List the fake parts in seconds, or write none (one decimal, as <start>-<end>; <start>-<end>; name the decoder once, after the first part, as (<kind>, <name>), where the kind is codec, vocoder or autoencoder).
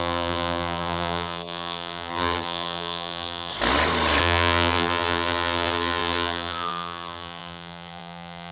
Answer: 0.0-3.5 (vocoder, BigVGAN v2); 4.2-8.5